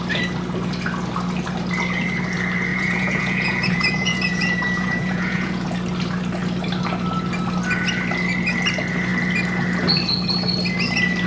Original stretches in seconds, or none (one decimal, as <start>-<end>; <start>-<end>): 0.0-2.7; 5.7-11.3